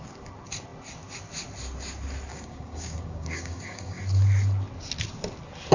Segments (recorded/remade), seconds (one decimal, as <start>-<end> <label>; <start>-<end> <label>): 0.0-2.3 recorded; 2.3-4.0 remade; 4.0-5.7 recorded